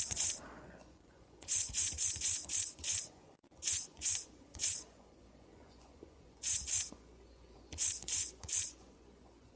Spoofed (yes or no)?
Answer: yes